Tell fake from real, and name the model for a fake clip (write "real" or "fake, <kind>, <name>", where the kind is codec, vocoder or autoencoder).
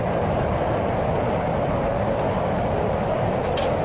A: real